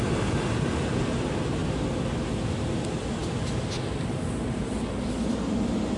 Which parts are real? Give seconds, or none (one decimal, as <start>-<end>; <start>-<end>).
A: 0.0-6.0